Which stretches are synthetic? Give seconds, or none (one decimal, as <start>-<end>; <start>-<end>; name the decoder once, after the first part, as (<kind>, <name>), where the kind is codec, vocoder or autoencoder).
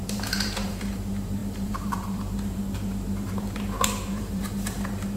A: 0.0-5.2 (vocoder, BigVGAN v2)